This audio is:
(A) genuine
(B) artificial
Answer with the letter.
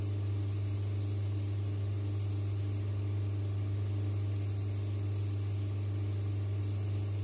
A